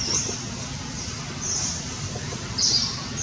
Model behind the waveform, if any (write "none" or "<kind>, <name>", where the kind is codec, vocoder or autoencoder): none